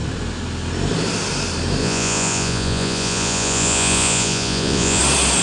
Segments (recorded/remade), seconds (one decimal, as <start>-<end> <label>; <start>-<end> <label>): 0.0-1.8 recorded; 1.8-5.0 remade; 5.0-5.4 recorded